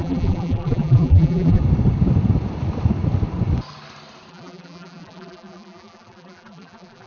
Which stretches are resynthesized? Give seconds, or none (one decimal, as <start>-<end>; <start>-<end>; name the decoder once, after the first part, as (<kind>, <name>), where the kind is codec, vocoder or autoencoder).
0.0-1.6 (vocoder, BigVGAN v2); 4.3-7.1